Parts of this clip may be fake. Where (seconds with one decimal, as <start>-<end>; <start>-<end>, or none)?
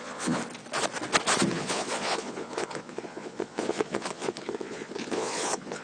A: 0.0-0.4; 1.5-5.8